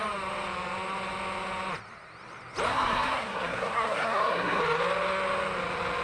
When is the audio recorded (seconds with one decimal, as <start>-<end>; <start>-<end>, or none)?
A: 0.0-2.7; 4.6-6.0

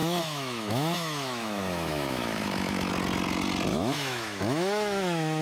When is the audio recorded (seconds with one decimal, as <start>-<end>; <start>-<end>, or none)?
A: 2.9-3.7